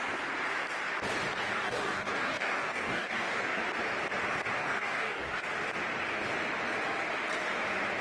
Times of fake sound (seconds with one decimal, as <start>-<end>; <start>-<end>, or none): 1.4-3.6; 4.6-5.4